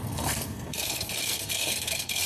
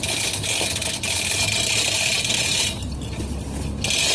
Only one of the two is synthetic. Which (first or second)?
first